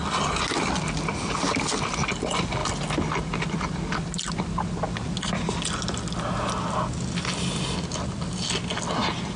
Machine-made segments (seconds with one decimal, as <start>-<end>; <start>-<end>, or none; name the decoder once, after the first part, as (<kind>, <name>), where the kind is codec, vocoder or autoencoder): none